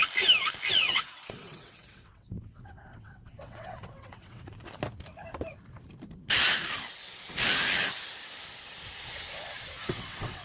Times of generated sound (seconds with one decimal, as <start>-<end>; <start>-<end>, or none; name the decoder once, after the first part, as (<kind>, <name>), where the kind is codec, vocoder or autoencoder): 0.7-4.6 (vocoder, WaveNeXt); 9.8-10.4